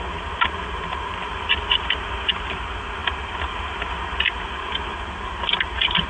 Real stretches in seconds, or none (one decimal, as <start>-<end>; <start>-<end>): 0.0-6.1

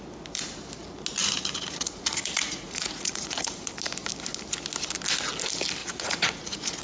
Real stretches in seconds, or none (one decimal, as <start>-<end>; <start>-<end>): 0.0-1.2; 3.7-5.8